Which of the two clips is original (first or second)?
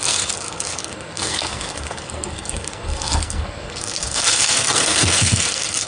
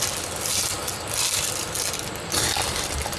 second